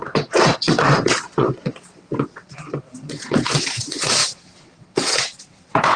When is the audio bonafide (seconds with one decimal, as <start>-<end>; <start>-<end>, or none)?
none